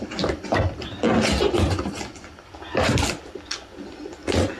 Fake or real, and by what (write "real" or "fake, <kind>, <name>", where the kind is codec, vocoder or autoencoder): real